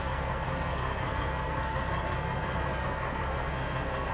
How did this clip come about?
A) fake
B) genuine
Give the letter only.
A